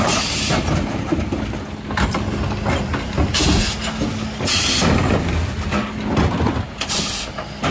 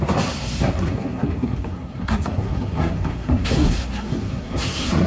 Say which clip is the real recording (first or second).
first